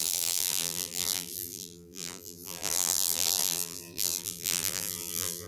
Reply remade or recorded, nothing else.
remade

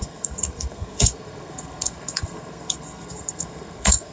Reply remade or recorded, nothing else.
remade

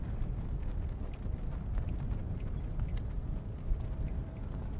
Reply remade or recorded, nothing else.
recorded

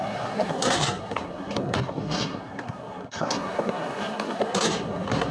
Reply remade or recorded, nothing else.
remade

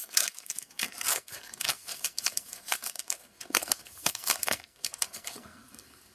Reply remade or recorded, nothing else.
remade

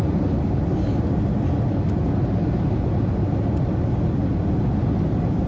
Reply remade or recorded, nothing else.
recorded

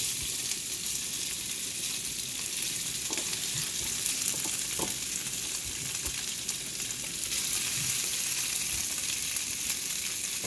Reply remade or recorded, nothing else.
recorded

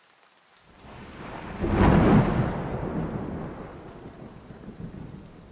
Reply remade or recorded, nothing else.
recorded